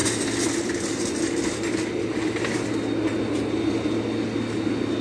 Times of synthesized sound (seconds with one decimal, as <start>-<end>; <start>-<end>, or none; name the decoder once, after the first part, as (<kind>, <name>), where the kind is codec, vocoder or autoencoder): none